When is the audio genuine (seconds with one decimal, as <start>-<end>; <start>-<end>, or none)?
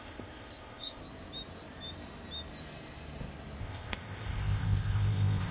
1.0-3.6